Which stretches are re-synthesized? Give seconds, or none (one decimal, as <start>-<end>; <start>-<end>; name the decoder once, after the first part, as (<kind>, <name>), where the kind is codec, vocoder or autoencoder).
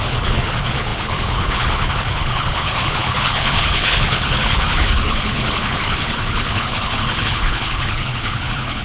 0.0-8.8 (codec, HILCodec)